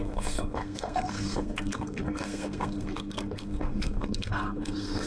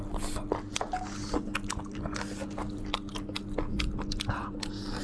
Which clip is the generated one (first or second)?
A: first